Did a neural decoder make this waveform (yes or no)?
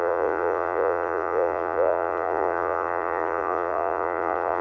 yes